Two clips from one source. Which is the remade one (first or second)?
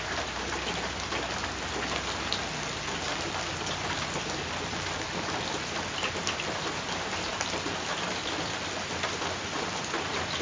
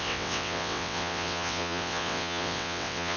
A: second